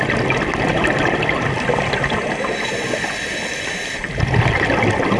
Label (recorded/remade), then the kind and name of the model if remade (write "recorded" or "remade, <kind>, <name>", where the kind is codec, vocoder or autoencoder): recorded